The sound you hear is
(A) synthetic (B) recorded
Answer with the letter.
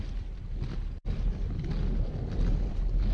B